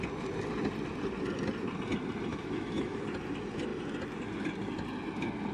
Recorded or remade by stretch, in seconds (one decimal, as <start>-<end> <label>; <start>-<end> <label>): 0.0-2.3 recorded; 2.3-3.0 remade; 3.0-5.5 recorded